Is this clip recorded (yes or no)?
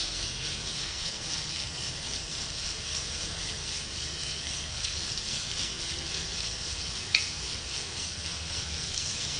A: no